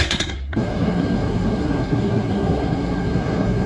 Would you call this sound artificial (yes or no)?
yes